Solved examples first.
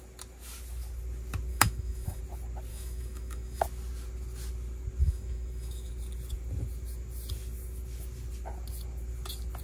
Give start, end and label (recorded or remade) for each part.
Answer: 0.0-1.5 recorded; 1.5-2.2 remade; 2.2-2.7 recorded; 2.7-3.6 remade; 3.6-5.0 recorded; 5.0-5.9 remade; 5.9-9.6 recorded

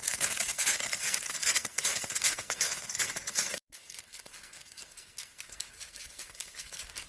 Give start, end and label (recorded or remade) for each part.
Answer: 0.0-7.1 remade

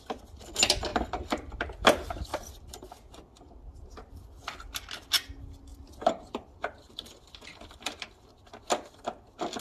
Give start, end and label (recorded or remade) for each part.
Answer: 0.0-0.9 recorded; 0.9-1.6 remade; 1.6-2.3 recorded; 2.3-3.9 remade; 3.9-5.7 recorded; 5.7-8.3 remade; 8.3-9.6 recorded